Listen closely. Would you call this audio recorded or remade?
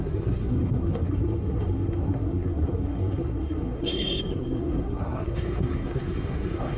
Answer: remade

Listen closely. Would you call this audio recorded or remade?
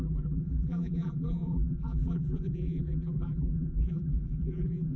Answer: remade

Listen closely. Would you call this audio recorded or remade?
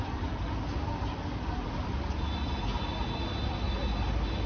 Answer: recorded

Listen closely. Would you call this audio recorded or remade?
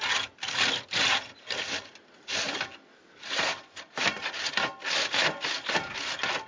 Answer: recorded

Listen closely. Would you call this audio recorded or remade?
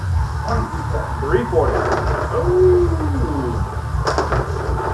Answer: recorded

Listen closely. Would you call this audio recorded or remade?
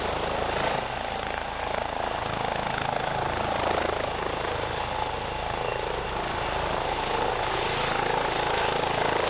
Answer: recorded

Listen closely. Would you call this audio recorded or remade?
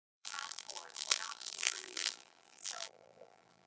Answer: remade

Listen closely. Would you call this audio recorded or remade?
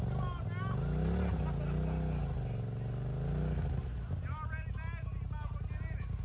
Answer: recorded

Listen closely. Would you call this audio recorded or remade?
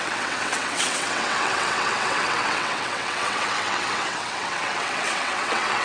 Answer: remade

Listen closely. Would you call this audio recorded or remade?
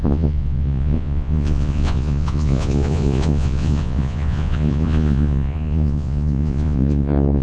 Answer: remade